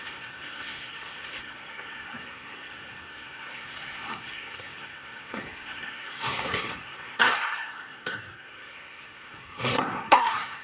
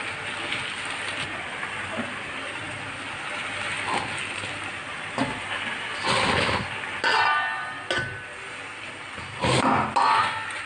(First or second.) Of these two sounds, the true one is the second